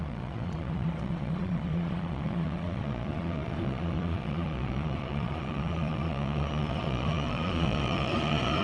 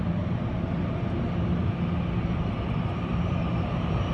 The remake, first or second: first